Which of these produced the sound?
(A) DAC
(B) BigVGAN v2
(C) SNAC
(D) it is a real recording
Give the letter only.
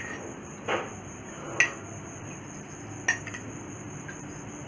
D